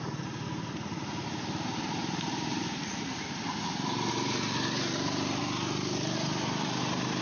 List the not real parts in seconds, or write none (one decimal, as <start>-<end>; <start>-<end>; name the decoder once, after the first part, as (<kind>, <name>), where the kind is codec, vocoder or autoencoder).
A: 2.0-5.4 (vocoder, BigVGAN v2)